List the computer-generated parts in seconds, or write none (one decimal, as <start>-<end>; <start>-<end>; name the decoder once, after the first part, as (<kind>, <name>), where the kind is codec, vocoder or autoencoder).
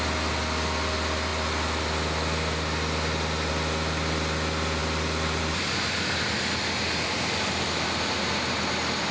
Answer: none